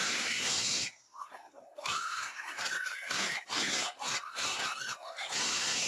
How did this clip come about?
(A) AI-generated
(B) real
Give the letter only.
A